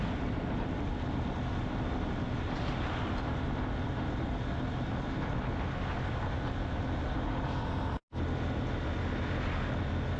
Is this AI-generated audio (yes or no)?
no